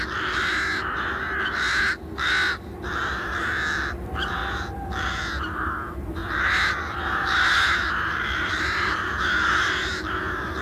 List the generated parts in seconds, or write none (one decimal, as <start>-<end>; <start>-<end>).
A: none